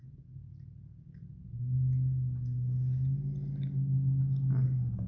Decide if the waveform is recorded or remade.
recorded